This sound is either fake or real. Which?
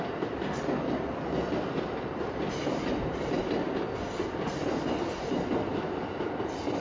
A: real